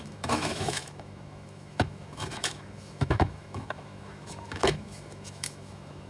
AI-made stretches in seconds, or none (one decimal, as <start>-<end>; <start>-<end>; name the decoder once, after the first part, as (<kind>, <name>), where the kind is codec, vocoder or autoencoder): 0.0-6.1 (autoencoder, DAC-VAE)